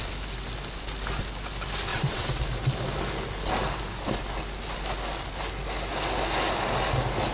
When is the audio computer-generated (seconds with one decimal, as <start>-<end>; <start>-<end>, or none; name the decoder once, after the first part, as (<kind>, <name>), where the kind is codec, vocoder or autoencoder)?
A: 1.9-2.4 (vocoder, WaveNeXt)